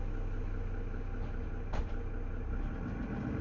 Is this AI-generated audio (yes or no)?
no